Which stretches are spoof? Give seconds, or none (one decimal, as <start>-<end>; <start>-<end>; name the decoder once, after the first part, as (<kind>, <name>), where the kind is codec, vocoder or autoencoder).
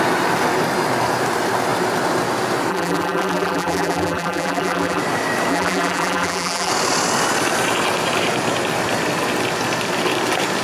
2.7-5.0 (vocoder, BigVGAN v2); 5.5-6.7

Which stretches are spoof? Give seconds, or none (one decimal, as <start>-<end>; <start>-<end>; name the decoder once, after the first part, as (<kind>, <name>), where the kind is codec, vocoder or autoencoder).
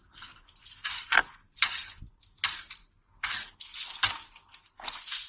none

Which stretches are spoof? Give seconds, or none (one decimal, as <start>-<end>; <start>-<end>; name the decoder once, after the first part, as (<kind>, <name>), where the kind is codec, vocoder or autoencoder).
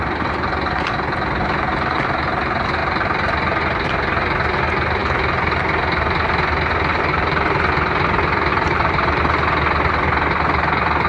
6.9-7.7 (vocoder, BigVGAN v2); 8.5-9.2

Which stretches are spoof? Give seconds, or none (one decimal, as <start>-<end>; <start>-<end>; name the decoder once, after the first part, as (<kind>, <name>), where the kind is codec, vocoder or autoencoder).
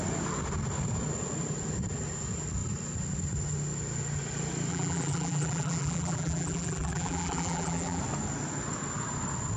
4.7-8.0 (vocoder, BigVGAN v2)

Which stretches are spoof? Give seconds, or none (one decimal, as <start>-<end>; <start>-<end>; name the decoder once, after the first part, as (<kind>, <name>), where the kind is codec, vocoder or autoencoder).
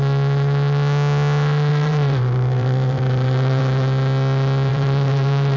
1.7-3.6 (vocoder, BigVGAN v2); 4.7-5.6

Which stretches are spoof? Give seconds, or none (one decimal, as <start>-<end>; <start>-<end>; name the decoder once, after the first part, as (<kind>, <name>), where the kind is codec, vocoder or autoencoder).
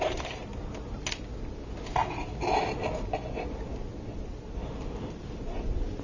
0.0-0.5 (vocoder, BigVGAN v2); 4.1-6.0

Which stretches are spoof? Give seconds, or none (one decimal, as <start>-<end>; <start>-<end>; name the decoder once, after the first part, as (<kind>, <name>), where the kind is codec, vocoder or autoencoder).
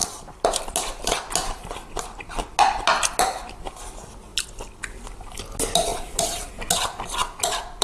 0.0-0.7 (vocoder, BigVGAN v2); 5.9-6.5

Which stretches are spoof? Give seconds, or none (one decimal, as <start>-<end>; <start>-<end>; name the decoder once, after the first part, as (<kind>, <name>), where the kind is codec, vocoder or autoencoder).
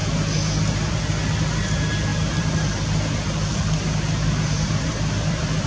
2.1-5.7 (vocoder, BigVGAN v2)